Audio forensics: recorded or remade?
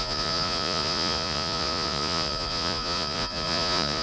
remade